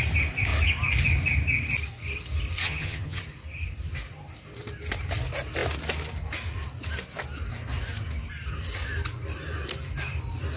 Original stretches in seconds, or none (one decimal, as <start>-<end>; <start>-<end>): 0.0-2.6; 3.2-10.6